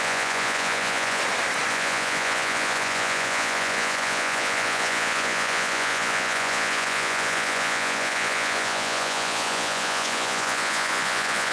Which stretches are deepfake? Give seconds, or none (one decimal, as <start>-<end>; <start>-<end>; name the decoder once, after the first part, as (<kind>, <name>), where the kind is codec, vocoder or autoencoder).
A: 0.0-1.2 (vocoder, Vocos); 1.7-11.5